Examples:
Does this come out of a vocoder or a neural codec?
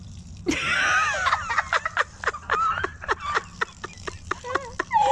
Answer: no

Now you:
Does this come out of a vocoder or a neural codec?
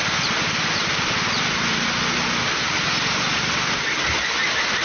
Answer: no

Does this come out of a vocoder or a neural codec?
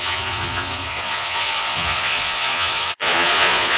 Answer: yes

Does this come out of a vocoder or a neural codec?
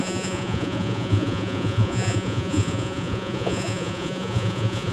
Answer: yes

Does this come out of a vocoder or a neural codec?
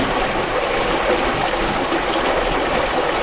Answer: no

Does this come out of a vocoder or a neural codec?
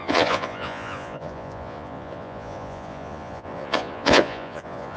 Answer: yes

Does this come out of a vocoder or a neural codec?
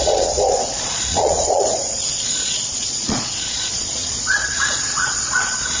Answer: yes